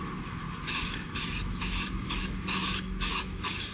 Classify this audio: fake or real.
fake